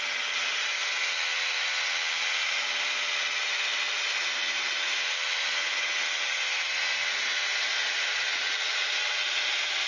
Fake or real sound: real